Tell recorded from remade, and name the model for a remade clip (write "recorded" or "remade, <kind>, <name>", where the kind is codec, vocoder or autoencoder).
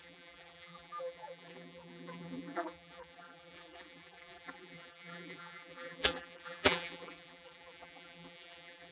remade, vocoder, BigVGAN v2